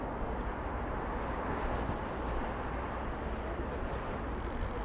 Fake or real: real